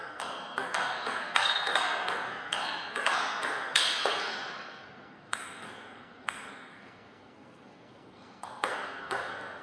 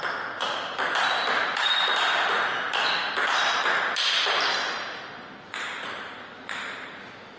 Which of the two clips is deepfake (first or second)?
first